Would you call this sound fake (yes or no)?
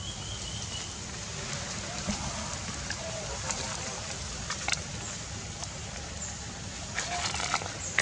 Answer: no